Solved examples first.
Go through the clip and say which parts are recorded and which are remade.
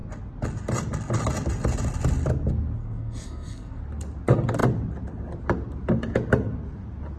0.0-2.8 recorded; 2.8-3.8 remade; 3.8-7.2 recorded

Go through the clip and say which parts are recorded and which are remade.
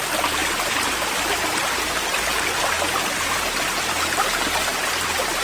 0.0-5.4 recorded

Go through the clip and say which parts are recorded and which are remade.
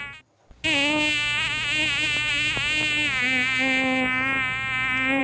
0.0-5.2 recorded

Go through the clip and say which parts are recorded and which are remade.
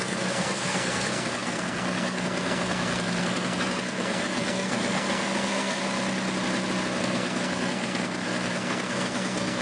0.0-5.8 remade; 5.8-7.0 recorded; 7.0-9.6 remade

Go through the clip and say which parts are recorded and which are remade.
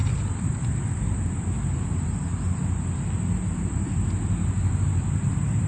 0.0-0.8 remade; 0.8-5.7 recorded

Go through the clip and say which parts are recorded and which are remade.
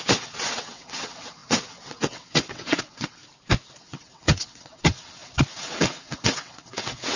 0.0-3.2 remade; 3.2-3.8 recorded; 3.8-7.2 remade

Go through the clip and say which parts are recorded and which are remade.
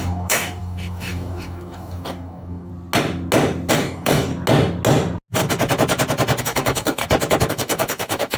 0.0-2.7 remade; 2.7-3.7 recorded; 3.7-4.3 remade; 4.3-6.4 recorded; 6.4-7.0 remade; 7.0-7.5 recorded; 7.5-8.4 remade